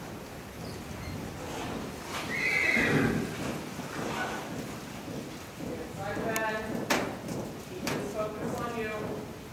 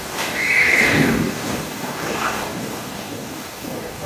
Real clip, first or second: first